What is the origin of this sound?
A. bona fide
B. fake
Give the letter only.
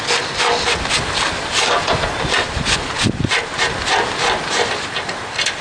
B